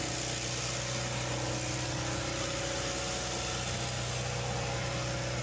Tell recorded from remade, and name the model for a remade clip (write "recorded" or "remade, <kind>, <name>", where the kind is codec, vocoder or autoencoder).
recorded